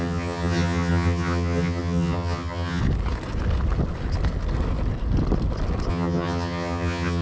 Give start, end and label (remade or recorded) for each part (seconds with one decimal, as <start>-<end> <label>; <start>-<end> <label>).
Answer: 0.0-2.8 remade; 2.8-5.9 recorded; 5.9-7.2 remade